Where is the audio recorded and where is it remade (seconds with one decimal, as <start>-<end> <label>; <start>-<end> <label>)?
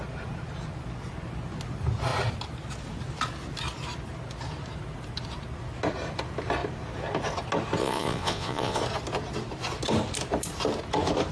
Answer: 0.0-7.8 recorded; 7.8-8.8 remade; 8.8-11.3 recorded